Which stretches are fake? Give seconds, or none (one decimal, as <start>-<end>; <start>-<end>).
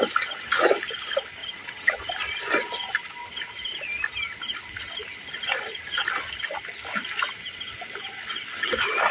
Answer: 1.4-2.1